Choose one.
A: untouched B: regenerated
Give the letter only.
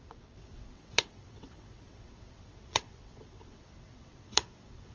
B